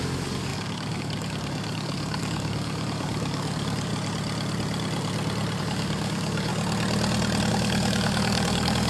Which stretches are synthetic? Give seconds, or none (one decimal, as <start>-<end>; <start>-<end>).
0.0-3.9; 5.6-6.5; 7.5-8.9

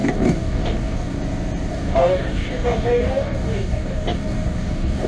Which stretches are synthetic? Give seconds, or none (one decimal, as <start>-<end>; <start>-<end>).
0.0-1.2; 1.7-5.1

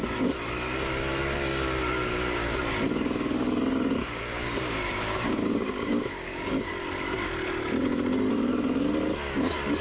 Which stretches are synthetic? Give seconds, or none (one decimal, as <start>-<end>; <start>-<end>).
2.1-2.6; 4.0-6.7

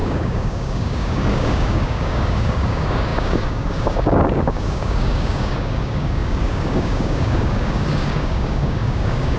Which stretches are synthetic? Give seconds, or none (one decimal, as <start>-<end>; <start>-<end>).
0.0-9.4

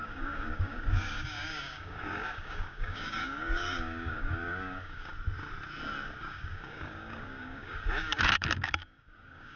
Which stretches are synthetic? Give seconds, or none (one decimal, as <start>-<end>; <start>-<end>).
0.0-5.1; 6.2-9.6

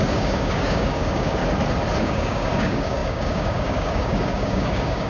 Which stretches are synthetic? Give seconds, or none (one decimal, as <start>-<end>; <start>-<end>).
0.0-1.4; 2.0-5.1

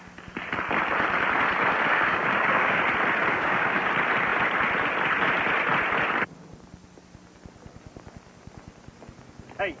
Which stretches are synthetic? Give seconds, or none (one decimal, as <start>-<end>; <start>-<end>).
1.9-2.8; 3.3-3.9